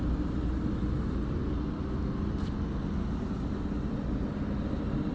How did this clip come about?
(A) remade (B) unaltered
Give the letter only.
B